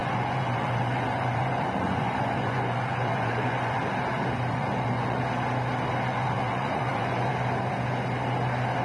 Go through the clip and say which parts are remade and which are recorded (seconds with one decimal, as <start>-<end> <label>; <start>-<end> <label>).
0.0-3.8 remade; 3.8-4.5 recorded; 4.5-5.2 remade; 5.2-6.1 recorded; 6.1-7.3 remade; 7.3-8.8 recorded